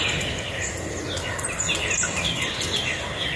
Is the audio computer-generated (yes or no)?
no